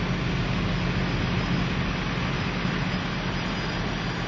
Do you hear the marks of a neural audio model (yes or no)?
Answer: no